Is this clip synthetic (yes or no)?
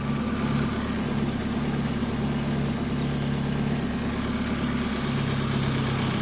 no